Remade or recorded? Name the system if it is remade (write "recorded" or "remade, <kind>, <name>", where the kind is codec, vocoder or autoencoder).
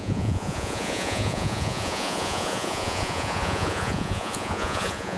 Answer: remade, vocoder, Vocos